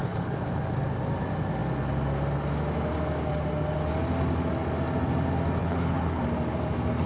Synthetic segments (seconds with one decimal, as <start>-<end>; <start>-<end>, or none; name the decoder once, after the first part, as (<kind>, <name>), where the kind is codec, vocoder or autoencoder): 0.0-0.6 (codec, HILCodec); 5.6-6.2